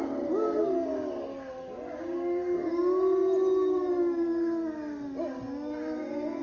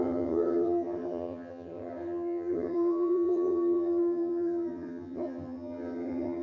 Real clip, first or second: first